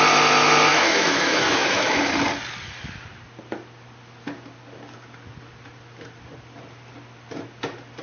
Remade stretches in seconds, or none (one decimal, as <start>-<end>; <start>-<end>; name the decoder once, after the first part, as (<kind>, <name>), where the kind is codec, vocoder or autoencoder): 0.7-2.1 (autoencoder, DAC-VAE)